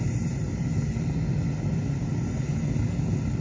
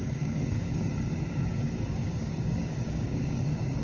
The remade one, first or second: second